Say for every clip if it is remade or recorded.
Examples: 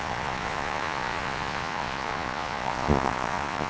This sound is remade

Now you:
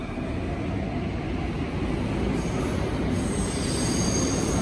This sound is recorded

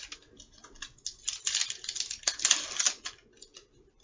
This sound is recorded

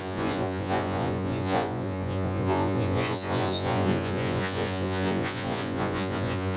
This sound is remade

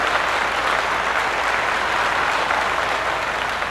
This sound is recorded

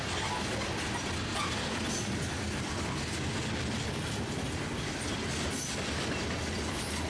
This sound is recorded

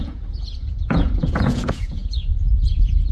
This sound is remade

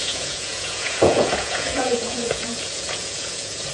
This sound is remade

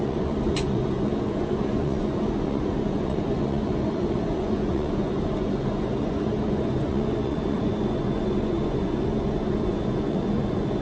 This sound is remade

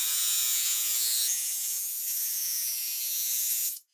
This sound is remade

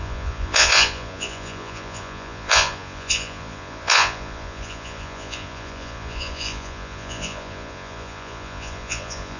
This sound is remade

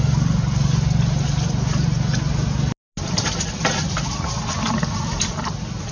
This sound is recorded